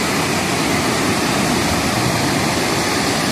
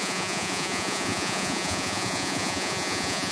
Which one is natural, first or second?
first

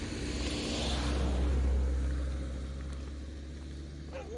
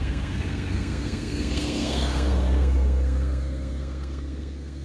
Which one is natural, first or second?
first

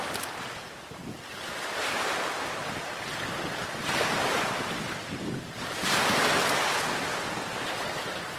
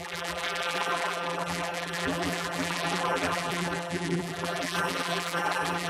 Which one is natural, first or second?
first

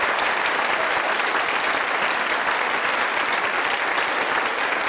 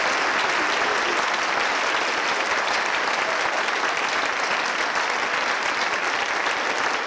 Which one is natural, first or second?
second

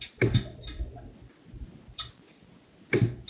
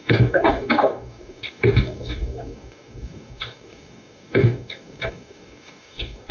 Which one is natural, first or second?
first